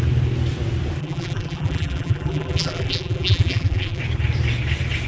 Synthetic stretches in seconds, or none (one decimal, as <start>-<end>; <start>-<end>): 1.0-4.0

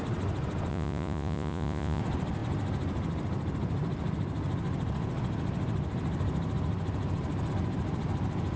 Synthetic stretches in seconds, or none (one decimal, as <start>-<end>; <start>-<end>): 0.7-2.0